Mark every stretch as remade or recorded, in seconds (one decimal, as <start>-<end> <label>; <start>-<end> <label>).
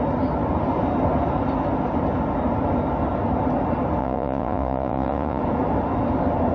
0.0-4.0 recorded; 4.0-5.4 remade; 5.4-6.5 recorded